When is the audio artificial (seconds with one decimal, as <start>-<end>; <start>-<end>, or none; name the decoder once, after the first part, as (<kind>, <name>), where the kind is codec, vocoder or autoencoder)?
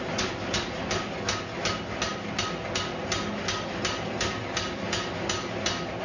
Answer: none